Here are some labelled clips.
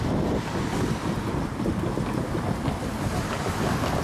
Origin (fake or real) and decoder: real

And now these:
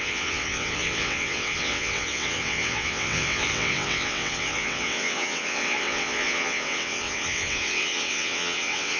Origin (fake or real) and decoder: fake, vocoder, WaveNeXt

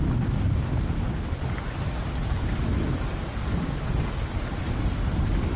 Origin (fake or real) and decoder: real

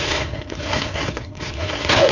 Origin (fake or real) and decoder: fake, codec, SNAC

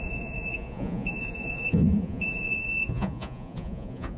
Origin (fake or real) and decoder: fake, vocoder, Vocos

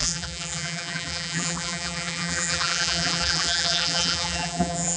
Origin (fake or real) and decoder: fake, vocoder, BigVGAN v2